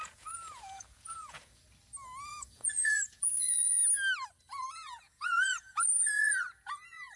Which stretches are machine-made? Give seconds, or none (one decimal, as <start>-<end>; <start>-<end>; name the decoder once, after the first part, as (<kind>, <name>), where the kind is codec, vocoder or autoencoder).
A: 0.0-1.6 (vocoder, Vocos); 2.3-3.8; 4.4-7.2